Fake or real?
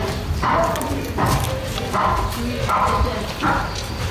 real